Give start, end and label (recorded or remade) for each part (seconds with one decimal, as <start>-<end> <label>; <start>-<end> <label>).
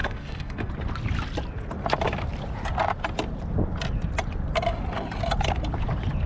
0.0-0.7 remade; 0.7-6.3 recorded